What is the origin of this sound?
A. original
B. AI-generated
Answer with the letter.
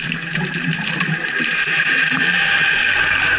B